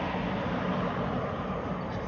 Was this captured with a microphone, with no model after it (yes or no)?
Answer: yes